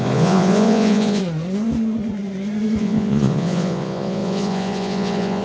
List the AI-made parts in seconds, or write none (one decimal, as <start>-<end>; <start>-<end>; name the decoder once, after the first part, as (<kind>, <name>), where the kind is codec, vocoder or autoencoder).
0.0-1.2 (vocoder, Vocos); 2.8-5.4